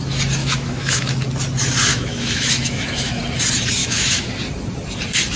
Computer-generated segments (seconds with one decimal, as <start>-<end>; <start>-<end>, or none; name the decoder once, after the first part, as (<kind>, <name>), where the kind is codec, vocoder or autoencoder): 0.4-1.2 (autoencoder, DAC-VAE); 1.9-3.2; 3.8-4.3